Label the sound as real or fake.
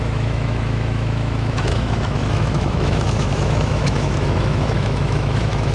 fake